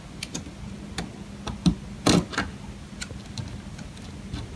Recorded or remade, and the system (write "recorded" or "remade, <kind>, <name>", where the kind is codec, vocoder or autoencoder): recorded